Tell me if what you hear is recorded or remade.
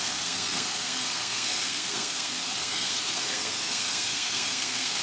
remade